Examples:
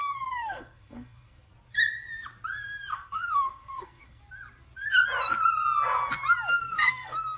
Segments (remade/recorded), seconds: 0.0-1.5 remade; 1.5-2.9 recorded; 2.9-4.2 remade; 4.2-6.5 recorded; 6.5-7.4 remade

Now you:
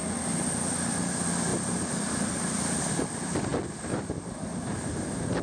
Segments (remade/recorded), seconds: 0.0-1.1 remade; 1.1-5.4 recorded